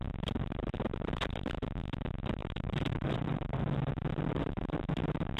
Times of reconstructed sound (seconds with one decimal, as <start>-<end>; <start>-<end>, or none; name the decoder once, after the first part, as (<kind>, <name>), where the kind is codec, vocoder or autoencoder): 2.4-3.6 (vocoder, BigVGAN v2)